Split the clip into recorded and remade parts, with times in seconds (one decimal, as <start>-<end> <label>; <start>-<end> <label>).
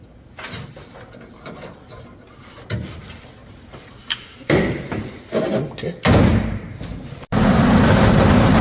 0.0-3.4 recorded; 3.4-5.2 remade; 5.2-6.3 recorded; 6.3-6.8 remade; 6.8-8.6 recorded